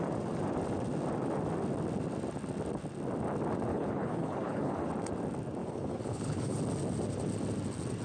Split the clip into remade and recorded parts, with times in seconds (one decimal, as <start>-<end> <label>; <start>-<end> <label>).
0.0-3.7 recorded; 3.7-4.9 remade; 4.9-5.6 recorded; 5.6-6.6 remade; 6.6-8.0 recorded

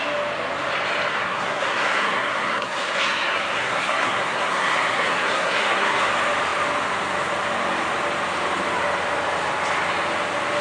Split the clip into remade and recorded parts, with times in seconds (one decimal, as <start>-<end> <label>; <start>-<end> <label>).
0.0-1.1 recorded; 1.1-6.1 remade; 6.1-10.6 recorded

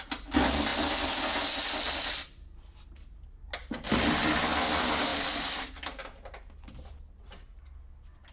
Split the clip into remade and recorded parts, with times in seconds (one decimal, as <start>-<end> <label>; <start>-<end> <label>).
0.0-3.6 recorded; 3.6-4.3 remade; 4.3-5.1 recorded; 5.1-7.2 remade; 7.2-8.3 recorded

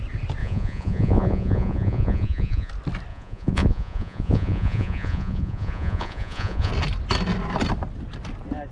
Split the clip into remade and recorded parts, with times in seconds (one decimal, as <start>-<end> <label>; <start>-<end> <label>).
0.0-0.4 recorded; 0.4-2.7 remade; 2.7-3.1 recorded; 3.1-6.7 remade; 6.7-8.7 recorded